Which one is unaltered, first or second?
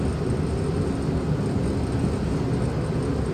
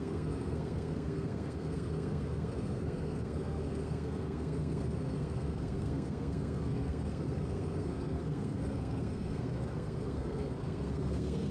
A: first